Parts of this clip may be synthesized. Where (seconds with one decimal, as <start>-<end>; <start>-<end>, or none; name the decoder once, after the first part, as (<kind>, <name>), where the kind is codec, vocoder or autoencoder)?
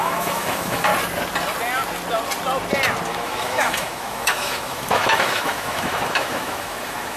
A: 0.0-0.9 (autoencoder, DAC-VAE); 3.1-7.2